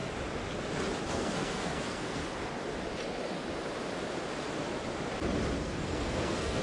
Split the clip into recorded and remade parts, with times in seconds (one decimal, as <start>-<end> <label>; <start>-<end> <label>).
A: 0.0-1.1 recorded; 1.1-2.2 remade; 2.2-5.6 recorded; 5.6-6.6 remade